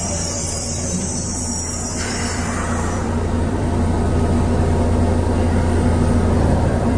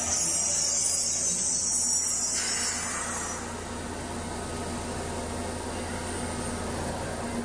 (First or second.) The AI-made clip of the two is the first